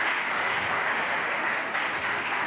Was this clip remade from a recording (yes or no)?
yes